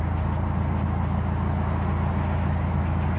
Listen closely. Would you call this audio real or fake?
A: real